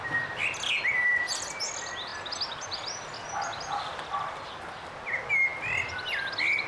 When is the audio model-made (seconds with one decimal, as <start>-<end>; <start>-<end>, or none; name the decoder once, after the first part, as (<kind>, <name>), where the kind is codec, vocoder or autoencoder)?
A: 1.1-1.7 (vocoder, BigVGAN v2); 2.1-4.5